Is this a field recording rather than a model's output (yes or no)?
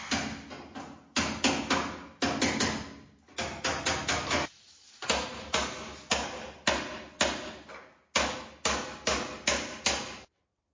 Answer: yes